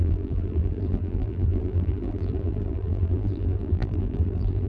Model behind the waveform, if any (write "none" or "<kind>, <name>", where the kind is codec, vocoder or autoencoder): vocoder, BigVGAN v2